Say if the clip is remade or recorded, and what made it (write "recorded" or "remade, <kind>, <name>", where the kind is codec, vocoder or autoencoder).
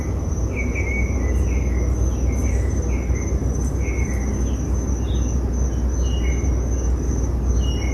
recorded